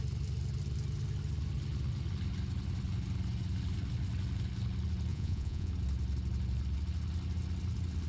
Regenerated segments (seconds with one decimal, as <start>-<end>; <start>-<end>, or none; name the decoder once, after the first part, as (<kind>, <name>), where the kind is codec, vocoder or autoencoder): 5.1-5.7 (vocoder, Vocos)